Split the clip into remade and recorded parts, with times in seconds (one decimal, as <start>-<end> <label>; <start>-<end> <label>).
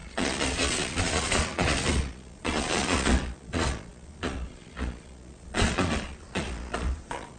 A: 0.0-7.4 remade